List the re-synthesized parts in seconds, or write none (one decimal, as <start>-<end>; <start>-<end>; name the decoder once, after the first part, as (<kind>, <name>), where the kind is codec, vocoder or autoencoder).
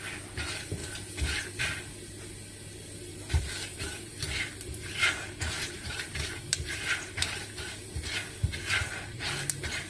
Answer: 3.1-7.7 (vocoder, BigVGAN v2)